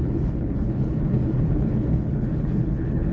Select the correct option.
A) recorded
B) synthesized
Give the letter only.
B